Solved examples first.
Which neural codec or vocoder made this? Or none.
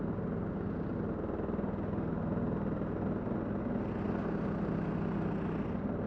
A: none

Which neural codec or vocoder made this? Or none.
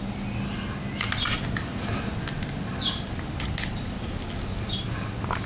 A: none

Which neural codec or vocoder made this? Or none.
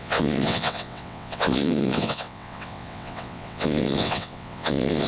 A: vocoder, WaveNeXt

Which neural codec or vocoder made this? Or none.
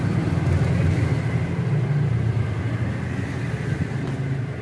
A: none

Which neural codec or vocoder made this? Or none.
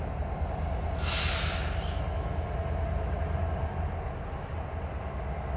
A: none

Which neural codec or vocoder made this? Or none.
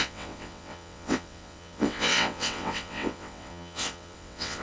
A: vocoder, WaveNeXt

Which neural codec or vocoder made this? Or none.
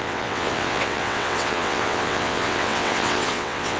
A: vocoder, WaveNeXt